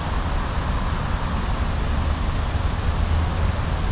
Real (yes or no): yes